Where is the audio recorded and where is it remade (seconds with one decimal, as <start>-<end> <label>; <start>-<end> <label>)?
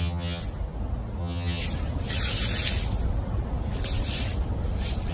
0.0-0.4 remade; 0.4-1.2 recorded; 1.2-1.6 remade; 1.6-5.1 recorded